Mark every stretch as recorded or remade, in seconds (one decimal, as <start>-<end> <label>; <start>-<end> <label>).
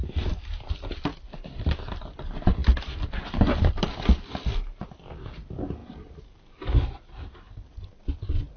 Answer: 0.0-8.6 recorded